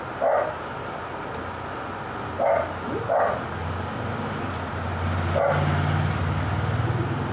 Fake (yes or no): no